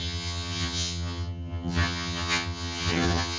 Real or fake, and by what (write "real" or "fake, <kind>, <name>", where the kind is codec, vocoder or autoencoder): fake, vocoder, HiFi-GAN